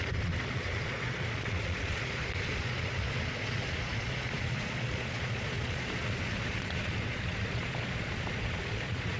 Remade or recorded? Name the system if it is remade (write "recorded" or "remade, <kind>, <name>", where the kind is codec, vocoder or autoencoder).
remade, vocoder, Vocos